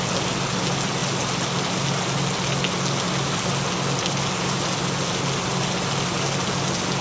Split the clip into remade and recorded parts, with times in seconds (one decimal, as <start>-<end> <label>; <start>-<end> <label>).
0.0-7.0 recorded